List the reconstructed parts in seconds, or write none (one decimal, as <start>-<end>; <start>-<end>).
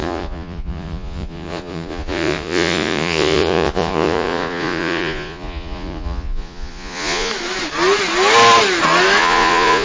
0.0-7.3; 9.2-9.8